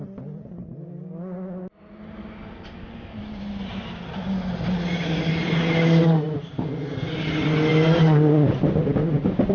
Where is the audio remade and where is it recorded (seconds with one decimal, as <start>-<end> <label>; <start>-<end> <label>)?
0.0-9.5 recorded